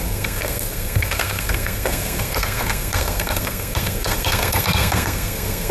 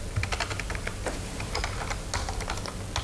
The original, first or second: second